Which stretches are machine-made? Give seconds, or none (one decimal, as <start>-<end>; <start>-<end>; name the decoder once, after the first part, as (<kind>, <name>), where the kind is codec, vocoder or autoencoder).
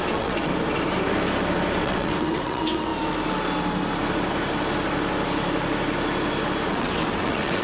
0.0-0.5 (vocoder, WaveNeXt); 1.8-2.9; 6.7-7.6